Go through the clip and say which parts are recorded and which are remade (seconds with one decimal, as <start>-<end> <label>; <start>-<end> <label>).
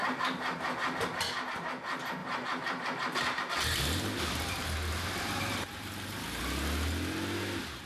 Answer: 0.0-0.6 remade; 0.6-2.2 recorded; 2.2-6.4 remade; 6.4-7.9 recorded